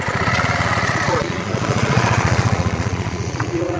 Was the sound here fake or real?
fake